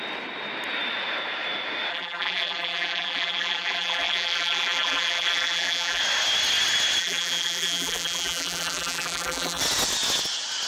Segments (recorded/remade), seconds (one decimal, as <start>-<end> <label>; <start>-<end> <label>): 0.0-1.9 recorded; 1.9-6.0 remade; 6.0-7.0 recorded; 7.0-9.6 remade; 9.6-10.7 recorded